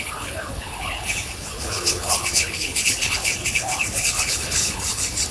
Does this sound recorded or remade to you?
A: remade